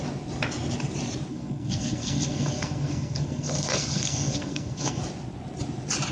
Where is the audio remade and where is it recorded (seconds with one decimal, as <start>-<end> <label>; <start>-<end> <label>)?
0.0-1.3 recorded; 1.3-5.0 remade; 5.0-6.1 recorded